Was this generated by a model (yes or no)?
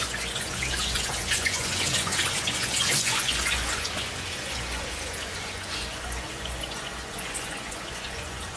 yes